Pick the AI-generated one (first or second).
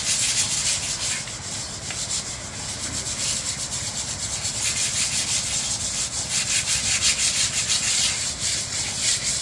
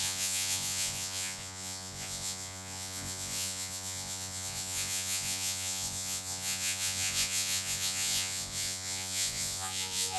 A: second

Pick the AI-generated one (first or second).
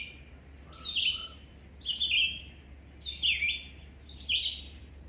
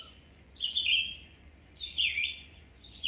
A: second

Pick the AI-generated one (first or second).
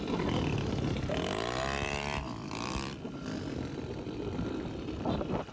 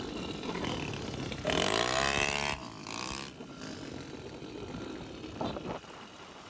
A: first